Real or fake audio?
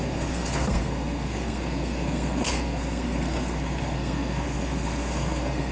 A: fake